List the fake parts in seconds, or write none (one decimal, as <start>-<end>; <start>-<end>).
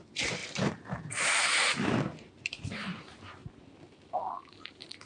0.0-3.4; 4.5-5.1